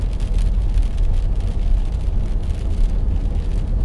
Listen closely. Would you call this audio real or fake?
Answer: real